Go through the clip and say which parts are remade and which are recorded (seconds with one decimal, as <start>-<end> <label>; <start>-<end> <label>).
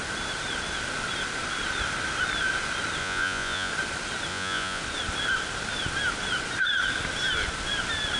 0.0-3.0 recorded; 3.0-3.7 remade; 3.7-4.3 recorded; 4.3-4.8 remade; 4.8-8.2 recorded